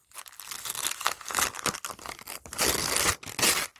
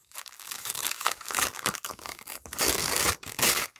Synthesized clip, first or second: second